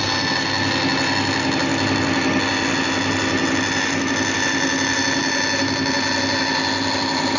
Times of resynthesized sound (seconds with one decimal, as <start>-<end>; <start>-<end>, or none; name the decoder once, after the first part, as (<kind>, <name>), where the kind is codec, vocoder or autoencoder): none